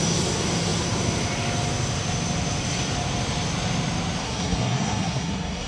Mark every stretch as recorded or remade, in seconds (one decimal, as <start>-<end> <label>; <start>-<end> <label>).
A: 0.0-4.2 recorded; 4.2-5.7 remade